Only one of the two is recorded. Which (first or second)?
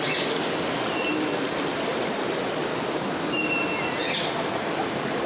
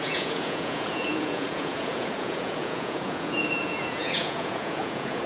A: first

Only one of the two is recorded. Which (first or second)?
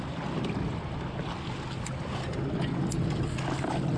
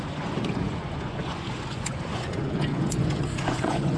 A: first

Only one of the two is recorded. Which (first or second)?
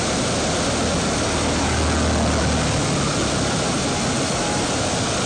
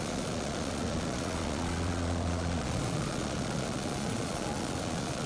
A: first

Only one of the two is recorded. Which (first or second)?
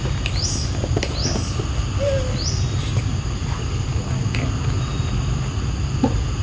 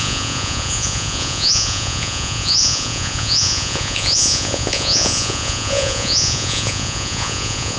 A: first